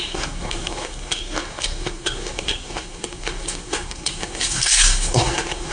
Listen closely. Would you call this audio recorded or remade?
remade